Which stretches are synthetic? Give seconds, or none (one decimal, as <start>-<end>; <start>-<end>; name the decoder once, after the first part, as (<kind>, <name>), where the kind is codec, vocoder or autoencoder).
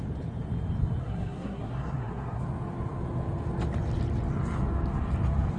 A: 1.0-2.4 (codec, SNAC)